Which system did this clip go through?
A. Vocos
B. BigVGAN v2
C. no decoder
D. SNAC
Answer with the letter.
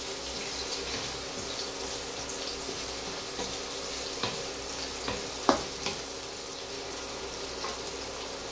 C